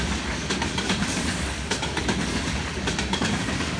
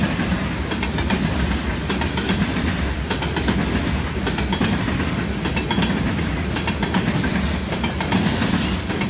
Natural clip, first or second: second